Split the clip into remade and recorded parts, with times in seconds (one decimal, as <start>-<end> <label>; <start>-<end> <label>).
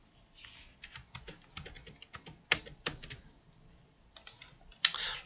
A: 0.0-5.3 recorded